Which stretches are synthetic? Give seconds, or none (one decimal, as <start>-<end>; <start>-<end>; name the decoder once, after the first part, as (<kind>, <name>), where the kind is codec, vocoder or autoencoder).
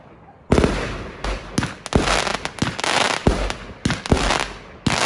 none